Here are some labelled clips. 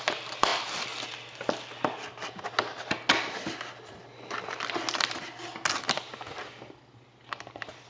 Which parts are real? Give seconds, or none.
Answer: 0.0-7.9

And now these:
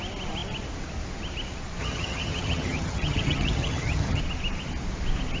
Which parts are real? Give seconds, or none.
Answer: 0.0-1.8; 4.2-5.4

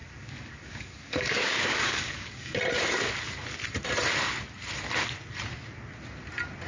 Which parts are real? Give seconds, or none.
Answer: 2.6-6.7